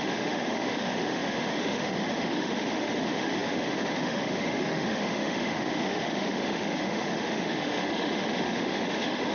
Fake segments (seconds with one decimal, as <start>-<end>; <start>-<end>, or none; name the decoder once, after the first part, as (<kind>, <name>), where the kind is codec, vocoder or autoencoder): 0.0-9.3 (autoencoder, DAC-VAE)